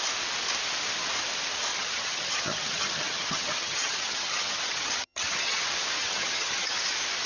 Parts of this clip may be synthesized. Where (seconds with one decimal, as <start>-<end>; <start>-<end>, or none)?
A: 1.7-5.6; 6.0-6.8